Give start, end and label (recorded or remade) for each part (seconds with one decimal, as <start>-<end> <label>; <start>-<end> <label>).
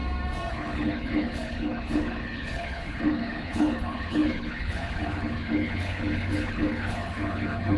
0.0-0.5 recorded; 0.5-7.8 remade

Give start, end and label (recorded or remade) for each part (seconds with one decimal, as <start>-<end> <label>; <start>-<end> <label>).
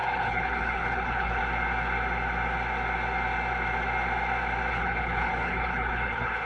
0.0-1.4 remade; 1.4-4.7 recorded; 4.7-6.4 remade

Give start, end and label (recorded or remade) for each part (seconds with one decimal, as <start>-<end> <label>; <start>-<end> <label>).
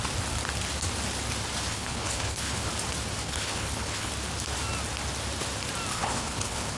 0.0-1.7 recorded; 1.7-2.7 remade; 2.7-3.2 recorded; 3.2-4.1 remade; 4.1-5.9 recorded; 5.9-6.8 remade